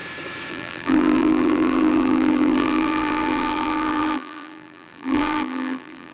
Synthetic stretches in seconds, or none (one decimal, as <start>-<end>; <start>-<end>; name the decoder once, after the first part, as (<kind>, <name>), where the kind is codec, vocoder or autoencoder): 0.5-6.1 (vocoder, BigVGAN v2)